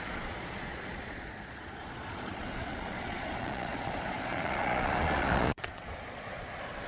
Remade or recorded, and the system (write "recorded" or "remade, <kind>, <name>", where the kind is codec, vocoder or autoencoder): remade, vocoder, Vocos